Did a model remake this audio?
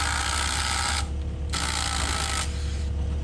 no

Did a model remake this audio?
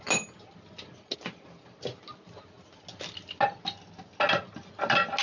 no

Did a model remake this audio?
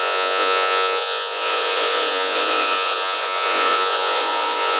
yes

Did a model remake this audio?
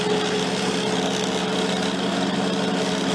no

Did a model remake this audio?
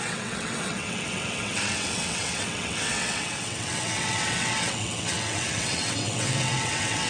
yes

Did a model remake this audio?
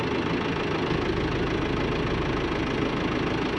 no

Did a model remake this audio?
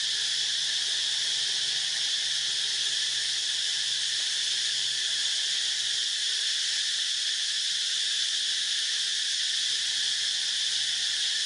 no